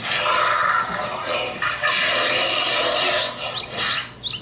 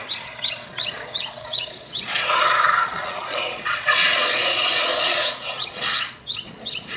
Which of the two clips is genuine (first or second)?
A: first